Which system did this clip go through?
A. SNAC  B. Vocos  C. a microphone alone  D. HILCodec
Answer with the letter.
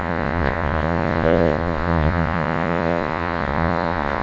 B